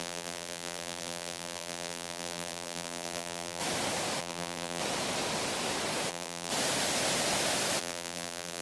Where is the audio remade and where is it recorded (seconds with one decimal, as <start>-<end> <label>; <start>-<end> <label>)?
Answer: 0.0-3.6 remade; 3.6-4.2 recorded; 4.2-4.8 remade; 4.8-6.1 recorded; 6.1-6.5 remade; 6.5-7.8 recorded; 7.8-8.6 remade